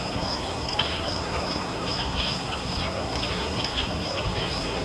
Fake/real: fake